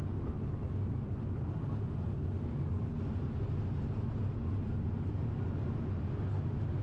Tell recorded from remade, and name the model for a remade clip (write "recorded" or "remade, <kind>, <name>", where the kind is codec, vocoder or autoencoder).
recorded